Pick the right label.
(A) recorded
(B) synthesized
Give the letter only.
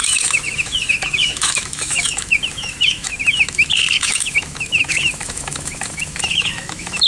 B